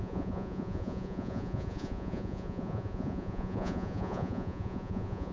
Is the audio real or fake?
fake